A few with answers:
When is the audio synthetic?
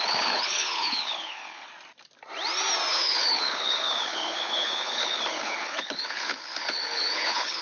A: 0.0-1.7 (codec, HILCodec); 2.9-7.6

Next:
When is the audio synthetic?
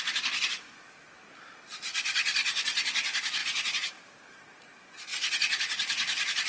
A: 3.4-3.9 (vocoder, Vocos); 5.1-6.5